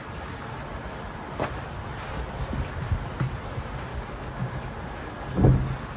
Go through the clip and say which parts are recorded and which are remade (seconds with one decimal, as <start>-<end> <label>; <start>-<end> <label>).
0.0-3.9 recorded; 3.9-4.6 remade; 4.6-6.0 recorded

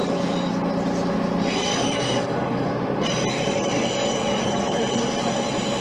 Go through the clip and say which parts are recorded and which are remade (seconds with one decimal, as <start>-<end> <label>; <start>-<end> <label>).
0.0-1.7 recorded; 1.7-2.7 remade; 2.7-3.3 recorded; 3.3-4.8 remade; 4.8-5.8 recorded

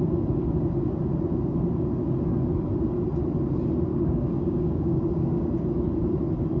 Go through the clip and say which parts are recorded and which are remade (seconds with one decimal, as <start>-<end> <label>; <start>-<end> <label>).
0.0-3.9 recorded; 3.9-5.5 remade; 5.5-6.6 recorded

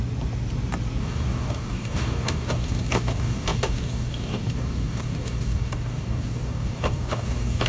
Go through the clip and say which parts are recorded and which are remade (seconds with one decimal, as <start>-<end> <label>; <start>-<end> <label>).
0.0-1.0 recorded; 1.0-7.7 remade

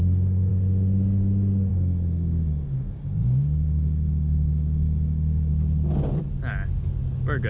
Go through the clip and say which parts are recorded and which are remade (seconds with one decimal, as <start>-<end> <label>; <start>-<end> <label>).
0.0-0.5 remade; 0.5-1.7 recorded; 1.7-5.5 remade; 5.5-7.5 recorded